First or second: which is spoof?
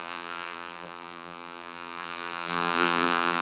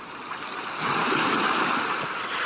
first